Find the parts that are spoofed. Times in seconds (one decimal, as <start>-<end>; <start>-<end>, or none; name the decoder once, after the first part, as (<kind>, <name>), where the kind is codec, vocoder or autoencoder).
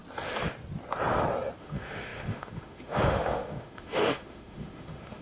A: 1.6-5.2 (autoencoder, DAC-VAE)